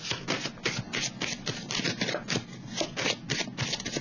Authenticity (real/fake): real